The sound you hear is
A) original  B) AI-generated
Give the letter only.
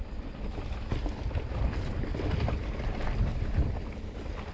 B